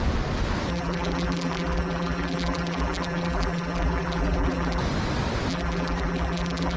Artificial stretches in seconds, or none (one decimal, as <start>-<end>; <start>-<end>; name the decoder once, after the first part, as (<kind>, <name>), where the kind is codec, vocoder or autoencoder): 0.7-4.8 (vocoder, BigVGAN v2); 5.5-6.8